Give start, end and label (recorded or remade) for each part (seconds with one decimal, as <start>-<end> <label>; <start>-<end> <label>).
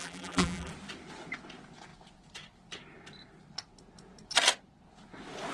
0.0-0.7 remade; 0.7-5.5 recorded